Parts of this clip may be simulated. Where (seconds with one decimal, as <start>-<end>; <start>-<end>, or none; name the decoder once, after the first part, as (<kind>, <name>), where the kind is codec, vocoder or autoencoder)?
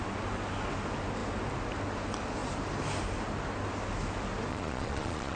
4.5-5.4 (vocoder, Vocos)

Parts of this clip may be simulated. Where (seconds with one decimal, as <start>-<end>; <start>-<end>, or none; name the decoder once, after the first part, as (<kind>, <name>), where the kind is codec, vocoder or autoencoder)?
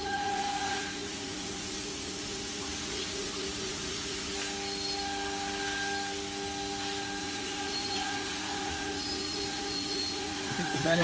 0.0-4.3 (vocoder, Vocos); 7.2-11.0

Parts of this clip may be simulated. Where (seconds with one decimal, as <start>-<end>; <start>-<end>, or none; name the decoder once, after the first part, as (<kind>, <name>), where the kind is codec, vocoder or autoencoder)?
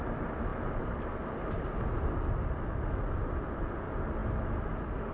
none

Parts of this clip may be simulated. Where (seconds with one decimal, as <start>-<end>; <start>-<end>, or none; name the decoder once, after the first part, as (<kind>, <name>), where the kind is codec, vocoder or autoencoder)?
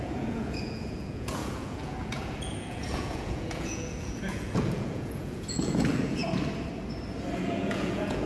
0.0-6.2 (vocoder, Vocos); 7.4-8.3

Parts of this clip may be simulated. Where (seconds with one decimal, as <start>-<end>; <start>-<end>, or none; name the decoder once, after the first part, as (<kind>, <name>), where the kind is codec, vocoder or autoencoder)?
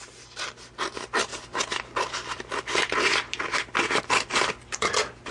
none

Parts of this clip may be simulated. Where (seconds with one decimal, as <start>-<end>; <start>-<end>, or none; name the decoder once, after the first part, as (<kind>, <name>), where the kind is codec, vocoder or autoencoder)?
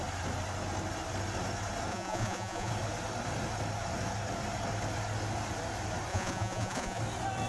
1.9-2.7 (vocoder, Vocos); 6.1-7.0